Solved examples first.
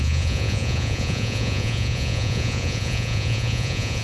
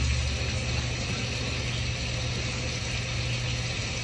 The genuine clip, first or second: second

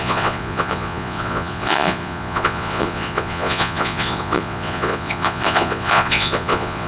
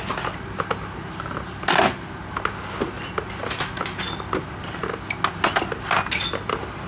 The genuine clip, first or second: second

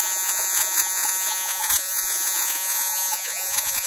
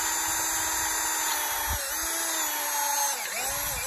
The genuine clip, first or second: second